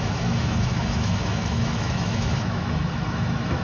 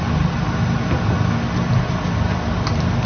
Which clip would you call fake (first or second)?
first